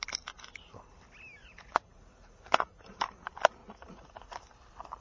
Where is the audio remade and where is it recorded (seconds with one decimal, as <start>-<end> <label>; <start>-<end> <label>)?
0.0-1.4 recorded; 1.4-3.0 remade; 3.0-3.6 recorded; 3.6-4.4 remade; 4.4-5.0 recorded